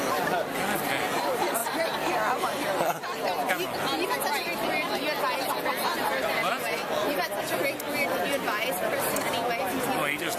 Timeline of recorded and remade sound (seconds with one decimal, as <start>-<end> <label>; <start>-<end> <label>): 0.0-10.4 recorded